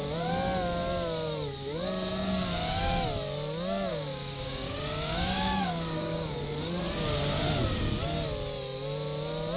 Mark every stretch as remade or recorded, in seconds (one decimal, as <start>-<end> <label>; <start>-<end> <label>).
0.0-3.9 recorded; 3.9-6.3 remade; 6.3-9.6 recorded